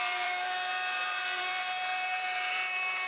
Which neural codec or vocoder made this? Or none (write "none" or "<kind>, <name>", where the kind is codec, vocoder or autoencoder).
vocoder, BigVGAN v2